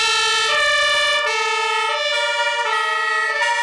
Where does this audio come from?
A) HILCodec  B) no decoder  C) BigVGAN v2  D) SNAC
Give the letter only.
B